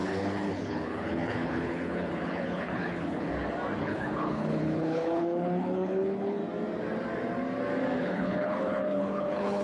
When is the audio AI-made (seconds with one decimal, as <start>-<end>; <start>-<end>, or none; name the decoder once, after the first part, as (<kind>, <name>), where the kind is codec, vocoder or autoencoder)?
0.0-3.3 (codec, HILCodec); 3.8-6.4; 8.0-9.6